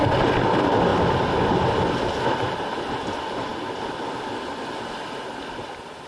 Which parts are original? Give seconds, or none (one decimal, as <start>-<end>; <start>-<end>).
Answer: 0.0-6.1